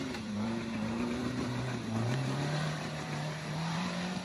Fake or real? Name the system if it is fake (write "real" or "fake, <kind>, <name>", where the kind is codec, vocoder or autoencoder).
fake, vocoder, BigVGAN v2